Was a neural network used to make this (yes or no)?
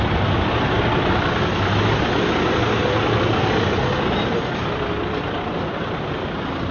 yes